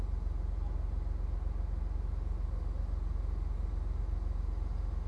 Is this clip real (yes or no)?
yes